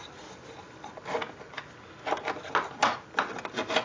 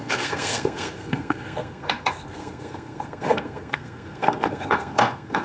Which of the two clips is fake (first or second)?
second